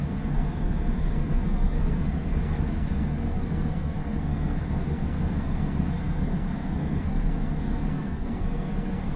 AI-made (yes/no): yes